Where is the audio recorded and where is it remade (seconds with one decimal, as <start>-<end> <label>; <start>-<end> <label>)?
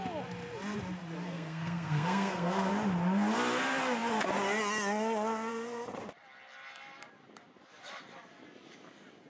0.0-1.2 recorded; 1.2-2.7 remade; 2.7-9.3 recorded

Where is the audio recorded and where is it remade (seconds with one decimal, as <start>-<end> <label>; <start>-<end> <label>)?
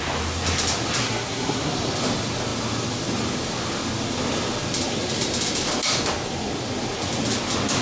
0.0-1.0 recorded; 1.0-1.7 remade; 1.7-7.8 recorded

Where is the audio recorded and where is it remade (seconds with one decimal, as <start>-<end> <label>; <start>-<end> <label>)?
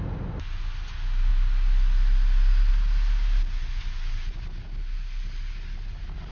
0.0-6.3 recorded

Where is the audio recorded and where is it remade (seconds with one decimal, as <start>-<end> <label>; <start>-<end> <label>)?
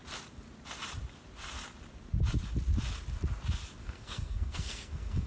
0.0-3.8 recorded; 3.8-5.3 remade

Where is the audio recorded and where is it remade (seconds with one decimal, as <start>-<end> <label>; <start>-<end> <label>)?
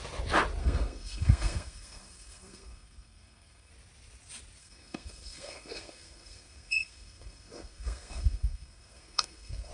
0.0-0.6 recorded; 0.6-3.7 remade; 3.7-4.6 recorded; 4.6-9.7 remade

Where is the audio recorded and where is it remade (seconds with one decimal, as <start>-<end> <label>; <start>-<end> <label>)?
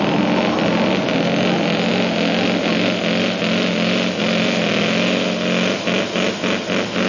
0.0-7.1 recorded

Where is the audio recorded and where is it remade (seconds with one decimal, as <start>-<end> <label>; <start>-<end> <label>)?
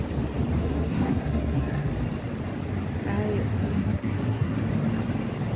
0.0-0.6 recorded; 0.6-1.9 remade; 1.9-3.6 recorded; 3.6-4.6 remade; 4.6-5.6 recorded